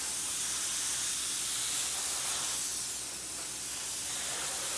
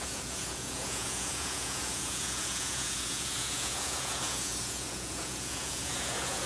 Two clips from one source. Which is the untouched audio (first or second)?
first